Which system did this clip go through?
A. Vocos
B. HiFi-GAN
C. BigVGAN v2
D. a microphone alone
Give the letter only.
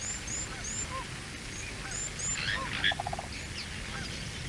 D